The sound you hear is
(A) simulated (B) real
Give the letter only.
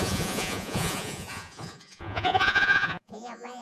A